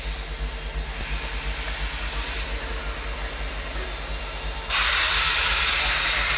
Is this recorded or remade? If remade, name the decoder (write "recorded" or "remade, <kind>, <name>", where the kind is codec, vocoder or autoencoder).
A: recorded